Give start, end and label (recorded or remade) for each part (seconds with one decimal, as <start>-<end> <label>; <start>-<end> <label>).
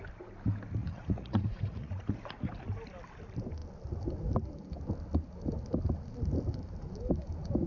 0.0-0.8 recorded; 0.8-2.1 remade; 2.1-7.7 recorded